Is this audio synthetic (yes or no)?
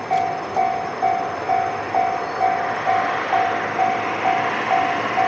no